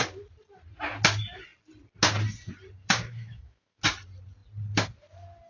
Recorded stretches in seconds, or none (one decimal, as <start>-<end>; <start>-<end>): 0.0-2.8; 3.8-5.5